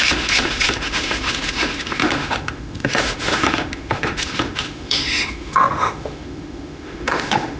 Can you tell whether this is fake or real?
fake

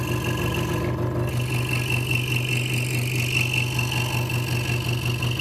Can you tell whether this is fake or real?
real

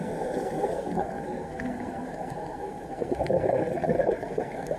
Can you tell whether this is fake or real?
fake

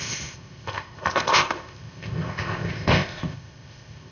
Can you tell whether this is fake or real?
fake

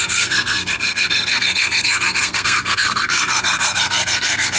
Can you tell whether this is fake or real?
fake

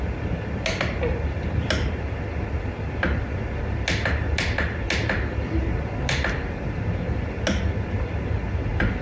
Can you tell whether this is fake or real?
real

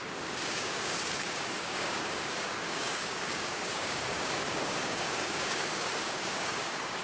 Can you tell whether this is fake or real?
fake